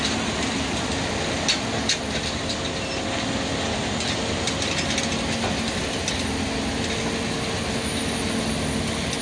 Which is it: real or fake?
real